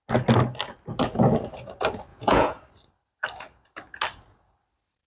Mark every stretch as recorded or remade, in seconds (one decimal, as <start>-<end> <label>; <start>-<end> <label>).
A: 0.0-2.1 recorded; 2.1-2.6 remade; 2.6-5.1 recorded